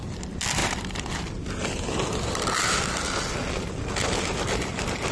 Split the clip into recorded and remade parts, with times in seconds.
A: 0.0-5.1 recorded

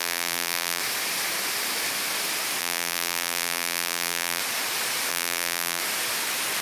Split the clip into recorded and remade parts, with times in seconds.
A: 0.0-0.8 remade; 0.8-2.6 recorded; 2.6-4.4 remade; 4.4-5.1 recorded; 5.1-5.8 remade; 5.8-6.6 recorded

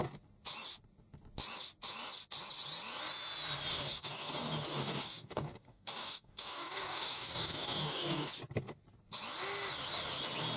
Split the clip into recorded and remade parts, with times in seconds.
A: 0.0-3.7 recorded; 3.7-4.3 remade; 4.3-4.8 recorded; 4.8-8.3 remade; 8.3-10.6 recorded